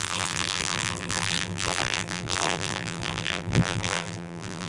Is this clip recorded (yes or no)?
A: no